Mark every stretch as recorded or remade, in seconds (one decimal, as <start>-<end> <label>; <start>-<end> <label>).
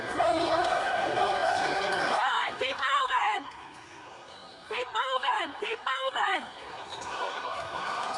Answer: 0.0-8.2 remade